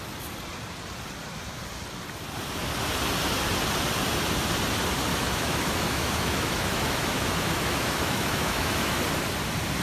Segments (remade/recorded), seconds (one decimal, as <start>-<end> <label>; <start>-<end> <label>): 0.0-5.1 recorded; 5.1-9.0 remade; 9.0-9.8 recorded